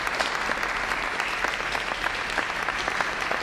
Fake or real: real